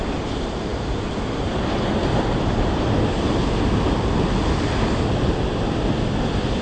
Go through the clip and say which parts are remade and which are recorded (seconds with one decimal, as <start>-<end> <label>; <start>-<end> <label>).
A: 0.0-6.6 recorded